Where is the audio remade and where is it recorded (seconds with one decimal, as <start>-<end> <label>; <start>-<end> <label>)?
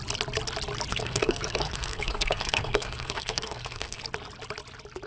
0.0-0.9 recorded; 0.9-4.0 remade; 4.0-5.1 recorded